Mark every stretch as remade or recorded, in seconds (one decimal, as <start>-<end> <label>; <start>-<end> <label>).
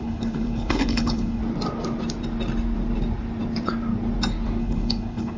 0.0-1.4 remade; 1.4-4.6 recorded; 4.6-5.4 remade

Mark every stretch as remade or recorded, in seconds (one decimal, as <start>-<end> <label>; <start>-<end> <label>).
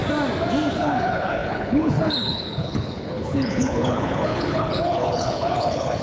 0.0-0.7 recorded; 0.7-6.0 remade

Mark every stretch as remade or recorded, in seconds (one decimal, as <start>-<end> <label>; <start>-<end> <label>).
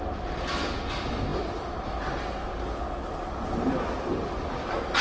0.0-5.0 recorded